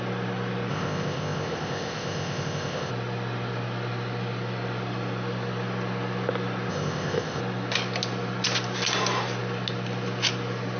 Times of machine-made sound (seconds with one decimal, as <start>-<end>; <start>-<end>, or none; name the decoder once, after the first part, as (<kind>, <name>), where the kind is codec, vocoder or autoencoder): 0.7-2.9 (codec, ZipCodec); 6.7-7.4